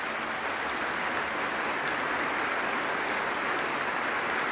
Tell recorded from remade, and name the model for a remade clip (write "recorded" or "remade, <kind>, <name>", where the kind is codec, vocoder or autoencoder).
recorded